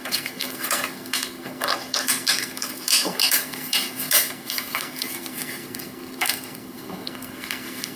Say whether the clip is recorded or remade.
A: remade